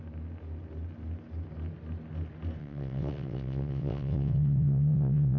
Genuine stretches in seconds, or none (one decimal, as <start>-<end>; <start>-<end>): 0.0-2.6

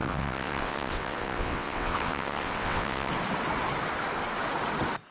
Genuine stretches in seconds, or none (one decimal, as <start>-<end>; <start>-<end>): 3.1-5.1

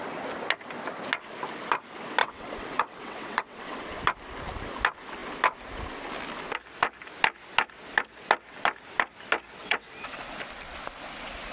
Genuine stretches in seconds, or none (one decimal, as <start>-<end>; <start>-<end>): 0.0-2.2; 3.8-9.6; 10.2-11.5

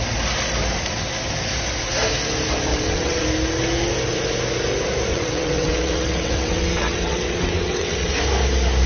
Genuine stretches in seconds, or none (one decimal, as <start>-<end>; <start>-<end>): 0.0-2.7; 3.2-5.1; 8.1-8.9

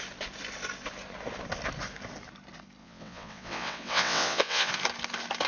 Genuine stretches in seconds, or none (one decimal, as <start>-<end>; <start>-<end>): 0.0-2.8; 4.7-5.5

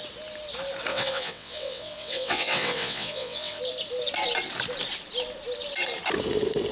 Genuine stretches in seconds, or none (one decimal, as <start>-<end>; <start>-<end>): 0.0-0.9; 3.6-6.7

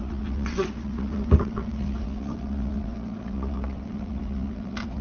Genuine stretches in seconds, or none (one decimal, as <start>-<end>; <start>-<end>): none

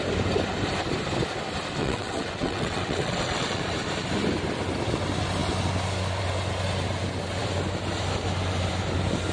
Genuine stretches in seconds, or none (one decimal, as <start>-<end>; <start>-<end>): 0.0-1.8; 3.6-9.3